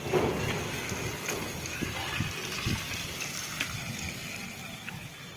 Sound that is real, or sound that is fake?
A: real